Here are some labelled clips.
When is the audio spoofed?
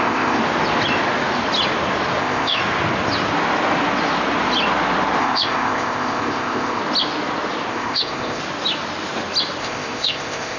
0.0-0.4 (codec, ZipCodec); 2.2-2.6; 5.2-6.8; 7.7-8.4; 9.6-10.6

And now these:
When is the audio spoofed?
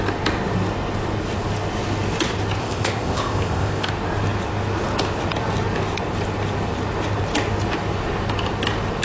2.6-3.9 (codec, ZipCodec)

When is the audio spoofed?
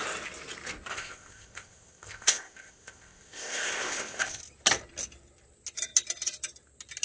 0.9-4.4 (codec, ZipCodec)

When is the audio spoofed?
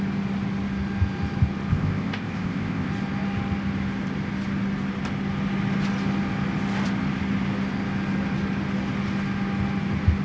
1.7-2.9 (codec, ZipCodec)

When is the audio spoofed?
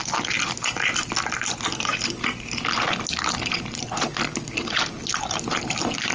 none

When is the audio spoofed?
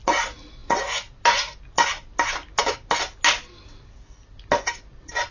none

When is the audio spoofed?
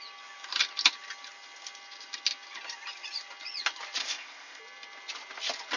4.0-4.6 (codec, ZipCodec)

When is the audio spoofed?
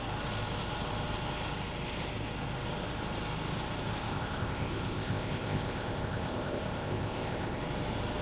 4.0-7.6 (codec, ZipCodec)